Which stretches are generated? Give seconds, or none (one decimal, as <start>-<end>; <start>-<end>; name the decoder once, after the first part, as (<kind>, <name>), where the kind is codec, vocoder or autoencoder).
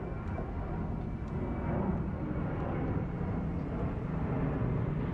1.9-4.6 (vocoder, BigVGAN v2)